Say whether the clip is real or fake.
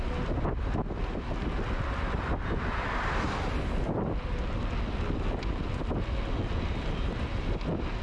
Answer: real